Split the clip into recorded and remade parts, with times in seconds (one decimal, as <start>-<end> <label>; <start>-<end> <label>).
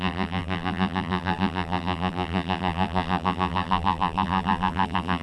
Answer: 0.0-5.2 remade